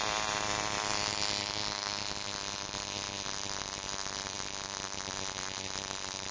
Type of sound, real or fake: real